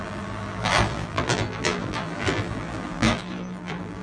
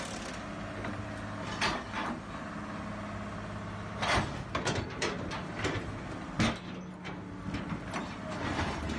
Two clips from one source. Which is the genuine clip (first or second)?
second